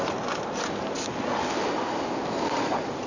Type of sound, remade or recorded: recorded